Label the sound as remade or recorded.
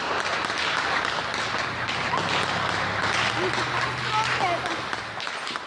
recorded